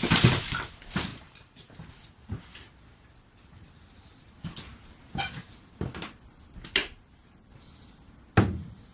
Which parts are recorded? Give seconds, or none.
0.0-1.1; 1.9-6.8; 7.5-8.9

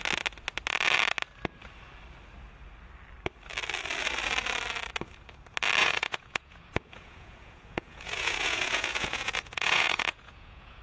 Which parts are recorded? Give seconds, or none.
0.0-5.8